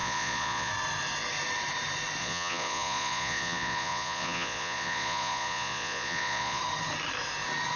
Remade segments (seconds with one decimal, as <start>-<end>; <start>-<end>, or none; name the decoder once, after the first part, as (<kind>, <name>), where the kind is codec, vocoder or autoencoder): 0.0-0.7 (vocoder, Vocos); 2.2-6.6